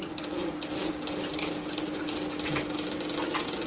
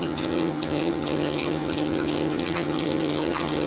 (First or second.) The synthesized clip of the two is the second